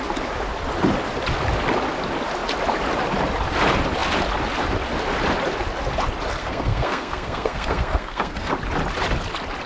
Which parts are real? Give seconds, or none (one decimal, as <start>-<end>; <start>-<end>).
0.0-6.4; 8.5-9.7